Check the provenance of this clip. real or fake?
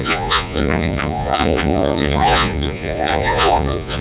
fake